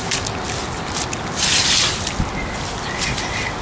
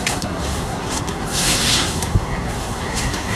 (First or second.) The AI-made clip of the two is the second